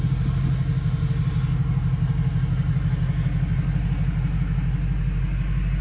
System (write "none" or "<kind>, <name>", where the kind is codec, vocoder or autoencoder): none